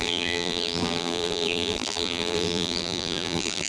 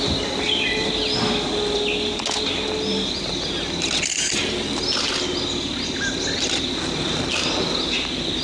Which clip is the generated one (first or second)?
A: first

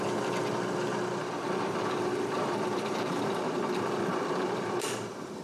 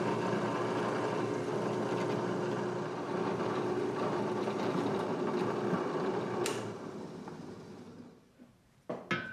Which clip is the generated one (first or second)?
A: first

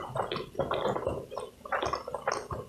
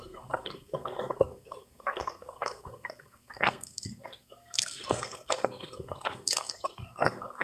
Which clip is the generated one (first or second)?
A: second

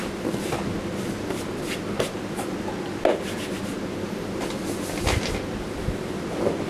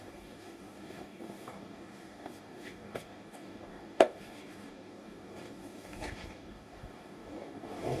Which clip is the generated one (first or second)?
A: second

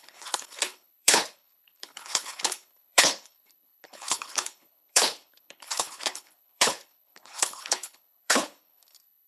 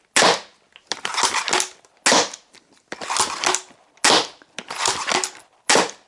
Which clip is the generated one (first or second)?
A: first